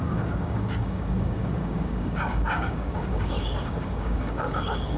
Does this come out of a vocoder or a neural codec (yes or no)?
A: yes